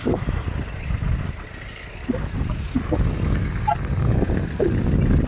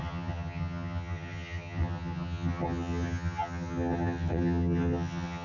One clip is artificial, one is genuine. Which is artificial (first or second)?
second